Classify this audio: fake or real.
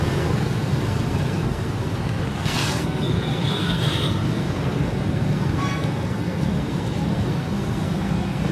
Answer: fake